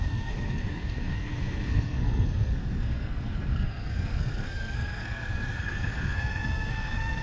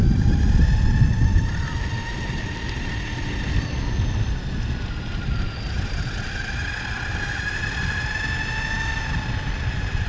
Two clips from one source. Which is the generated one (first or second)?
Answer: first